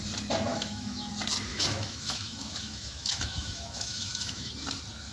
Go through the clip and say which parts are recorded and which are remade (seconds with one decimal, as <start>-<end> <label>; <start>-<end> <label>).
0.0-0.5 recorded; 0.5-1.1 remade; 1.1-1.5 recorded; 1.5-4.5 remade; 4.5-5.1 recorded